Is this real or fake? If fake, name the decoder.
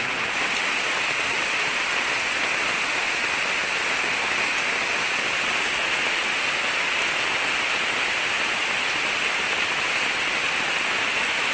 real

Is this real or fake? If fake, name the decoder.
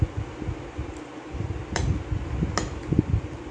real